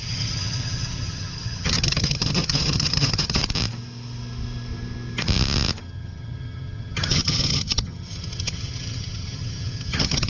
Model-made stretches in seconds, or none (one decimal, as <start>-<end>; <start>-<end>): 0.0-3.4; 5.8-10.3